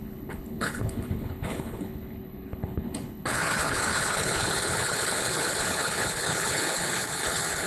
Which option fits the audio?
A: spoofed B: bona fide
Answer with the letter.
A